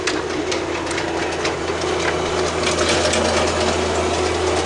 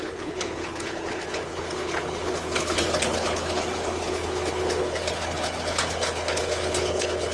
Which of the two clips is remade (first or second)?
second